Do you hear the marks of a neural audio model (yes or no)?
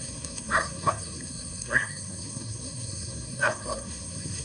yes